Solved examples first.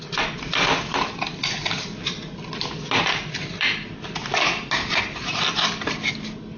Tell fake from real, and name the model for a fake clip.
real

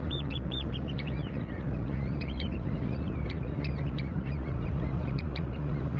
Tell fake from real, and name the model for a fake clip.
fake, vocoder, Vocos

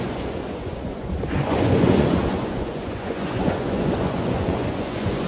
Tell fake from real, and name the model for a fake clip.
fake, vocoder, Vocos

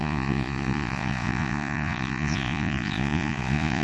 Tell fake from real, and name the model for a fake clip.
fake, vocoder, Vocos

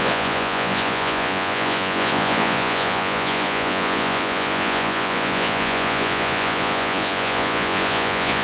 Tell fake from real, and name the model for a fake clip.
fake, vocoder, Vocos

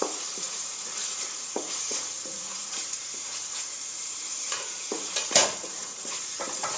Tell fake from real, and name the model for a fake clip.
fake, vocoder, Vocos